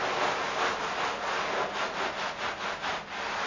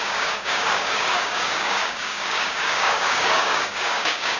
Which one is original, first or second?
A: first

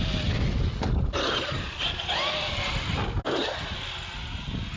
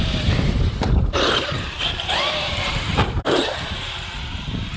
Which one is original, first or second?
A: first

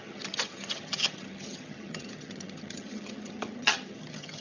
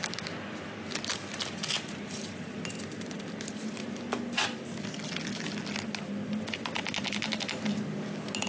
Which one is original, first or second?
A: second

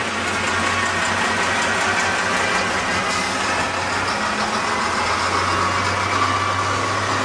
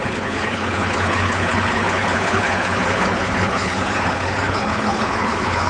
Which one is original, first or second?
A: first